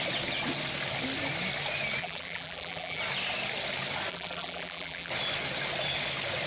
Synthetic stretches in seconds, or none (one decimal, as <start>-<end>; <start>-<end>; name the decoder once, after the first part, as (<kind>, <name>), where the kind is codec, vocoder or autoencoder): 2.0-3.0 (vocoder, BigVGAN v2); 4.1-5.1